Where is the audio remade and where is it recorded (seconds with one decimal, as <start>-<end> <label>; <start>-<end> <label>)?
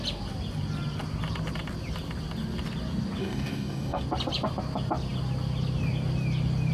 0.0-3.2 recorded; 3.2-4.0 remade; 4.0-6.7 recorded